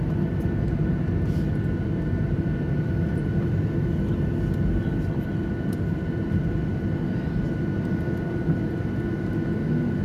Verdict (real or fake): real